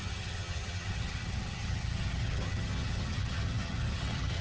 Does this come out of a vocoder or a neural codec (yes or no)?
yes